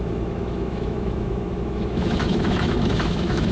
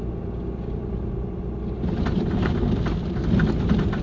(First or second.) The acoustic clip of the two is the second